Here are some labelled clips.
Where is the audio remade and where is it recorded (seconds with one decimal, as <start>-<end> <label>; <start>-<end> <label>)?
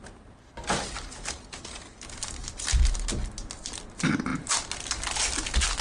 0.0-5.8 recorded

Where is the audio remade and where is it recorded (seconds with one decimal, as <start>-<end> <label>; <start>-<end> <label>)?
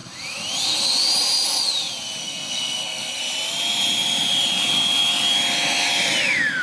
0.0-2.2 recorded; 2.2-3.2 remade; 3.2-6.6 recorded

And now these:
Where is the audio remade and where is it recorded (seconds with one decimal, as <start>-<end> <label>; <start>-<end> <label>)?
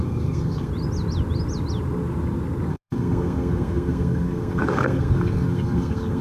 0.0-0.7 remade; 0.7-2.7 recorded; 2.7-6.2 remade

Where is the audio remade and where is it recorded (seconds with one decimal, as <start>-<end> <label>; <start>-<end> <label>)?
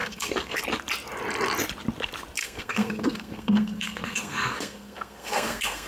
0.0-0.6 remade; 0.6-2.4 recorded; 2.4-5.9 remade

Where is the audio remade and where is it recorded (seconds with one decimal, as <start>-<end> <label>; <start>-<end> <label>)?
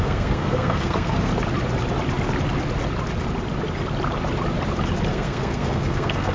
0.0-1.3 remade; 1.3-5.1 recorded; 5.1-6.3 remade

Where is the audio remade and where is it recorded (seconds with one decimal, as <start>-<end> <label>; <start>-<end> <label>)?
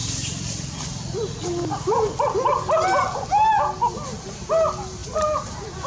0.0-5.9 recorded